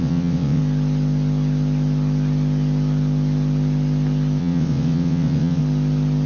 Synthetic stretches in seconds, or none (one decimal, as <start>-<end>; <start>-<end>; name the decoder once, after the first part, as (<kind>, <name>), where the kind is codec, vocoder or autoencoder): 0.0-0.6 (vocoder, WaveNeXt); 4.4-5.6